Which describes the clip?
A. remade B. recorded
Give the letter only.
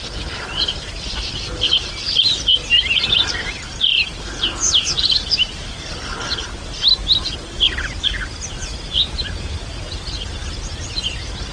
B